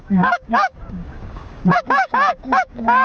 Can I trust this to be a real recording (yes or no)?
no